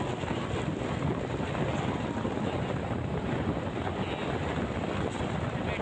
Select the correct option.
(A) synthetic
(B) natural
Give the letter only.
B